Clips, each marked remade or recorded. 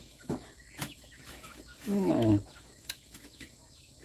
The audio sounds remade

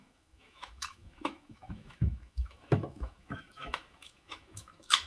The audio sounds remade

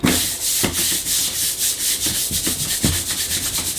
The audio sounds recorded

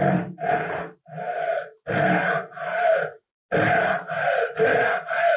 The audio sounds recorded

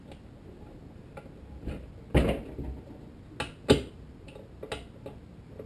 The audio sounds recorded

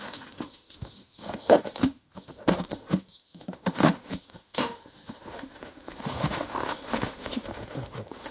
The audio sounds remade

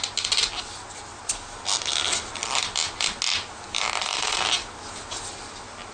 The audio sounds recorded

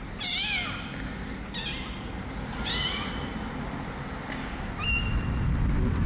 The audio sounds recorded